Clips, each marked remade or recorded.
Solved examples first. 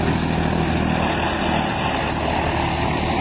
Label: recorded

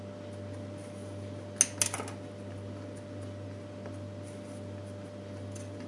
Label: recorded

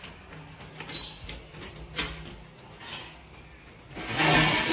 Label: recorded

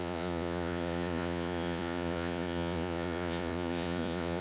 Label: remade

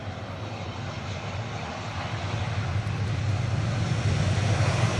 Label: recorded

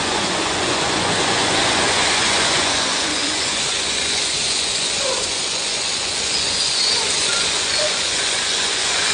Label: remade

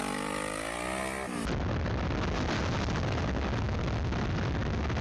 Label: recorded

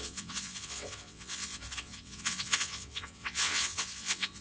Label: remade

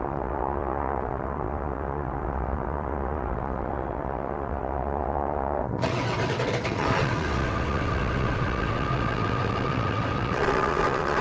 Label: remade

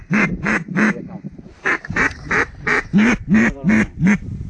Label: remade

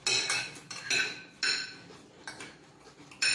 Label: recorded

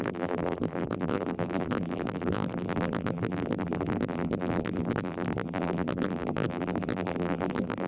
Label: remade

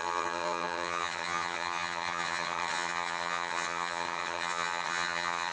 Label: remade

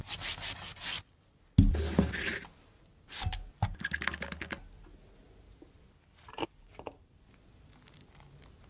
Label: recorded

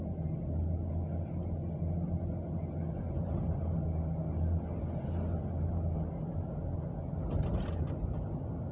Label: recorded